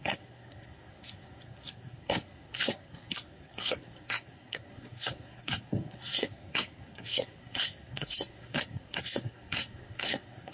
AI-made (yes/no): yes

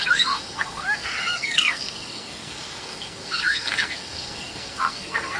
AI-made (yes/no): yes